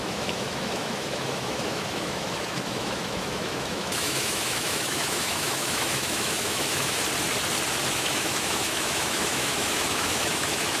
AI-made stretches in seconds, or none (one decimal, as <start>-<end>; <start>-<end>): 0.0-7.0; 7.9-10.8